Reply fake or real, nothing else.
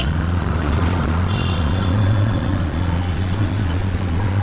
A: fake